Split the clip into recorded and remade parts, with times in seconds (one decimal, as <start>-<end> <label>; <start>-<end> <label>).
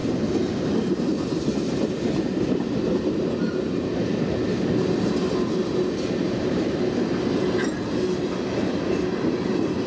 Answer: 0.0-9.9 recorded